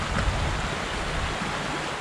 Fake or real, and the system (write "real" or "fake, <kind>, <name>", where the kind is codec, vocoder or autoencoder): real